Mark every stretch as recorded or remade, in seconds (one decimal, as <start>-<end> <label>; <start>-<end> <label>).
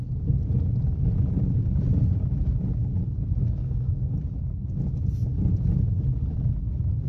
0.0-3.6 recorded; 3.6-4.2 remade; 4.2-7.1 recorded